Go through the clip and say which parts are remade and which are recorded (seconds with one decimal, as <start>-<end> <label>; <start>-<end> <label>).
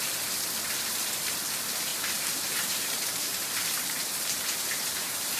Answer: 0.0-1.9 recorded; 1.9-5.4 remade